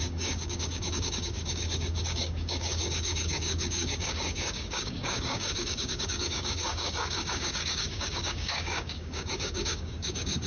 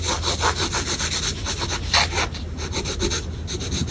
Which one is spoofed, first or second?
first